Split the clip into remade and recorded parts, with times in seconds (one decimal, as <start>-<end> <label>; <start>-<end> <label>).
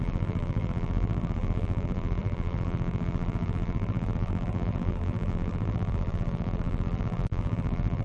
0.0-8.0 remade